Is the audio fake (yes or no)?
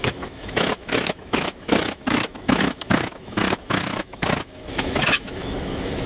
yes